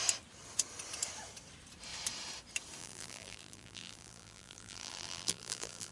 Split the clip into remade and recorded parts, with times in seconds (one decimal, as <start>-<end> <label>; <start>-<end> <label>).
0.0-2.8 recorded; 2.8-5.9 remade